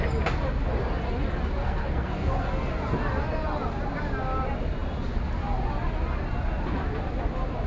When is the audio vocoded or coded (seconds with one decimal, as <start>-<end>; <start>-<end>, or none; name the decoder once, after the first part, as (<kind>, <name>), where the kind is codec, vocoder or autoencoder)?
1.6-2.7 (codec, SNAC)